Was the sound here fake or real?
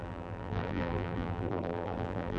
fake